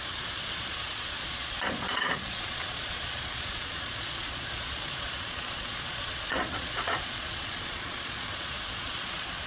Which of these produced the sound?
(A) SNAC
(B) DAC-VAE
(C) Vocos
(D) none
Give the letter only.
C